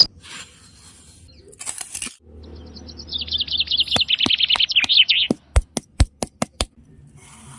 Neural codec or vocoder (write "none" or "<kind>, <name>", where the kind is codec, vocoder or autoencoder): none